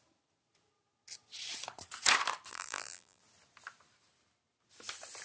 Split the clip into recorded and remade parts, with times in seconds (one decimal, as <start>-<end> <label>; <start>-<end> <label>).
0.0-2.5 recorded; 2.5-3.2 remade; 3.2-5.2 recorded